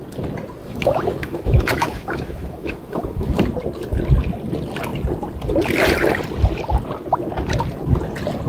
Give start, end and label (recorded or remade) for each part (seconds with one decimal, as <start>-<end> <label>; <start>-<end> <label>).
0.0-0.6 recorded; 0.6-3.4 remade; 3.4-8.5 recorded